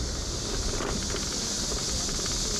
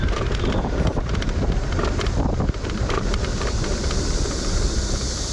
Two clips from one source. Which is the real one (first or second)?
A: first